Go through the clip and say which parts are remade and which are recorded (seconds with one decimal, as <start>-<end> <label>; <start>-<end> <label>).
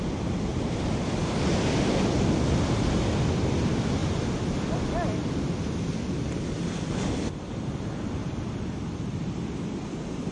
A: 0.0-0.5 recorded; 0.5-2.7 remade; 2.7-8.2 recorded; 8.2-9.0 remade; 9.0-10.3 recorded